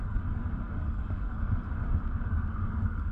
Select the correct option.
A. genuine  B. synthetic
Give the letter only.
B